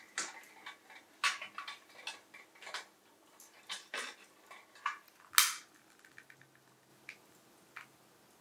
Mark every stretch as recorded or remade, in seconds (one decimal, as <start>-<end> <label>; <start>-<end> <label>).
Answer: 0.0-8.4 recorded